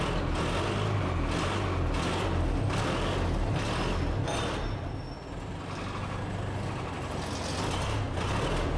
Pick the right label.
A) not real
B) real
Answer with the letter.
B